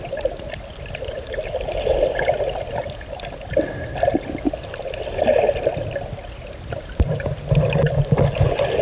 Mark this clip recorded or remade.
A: recorded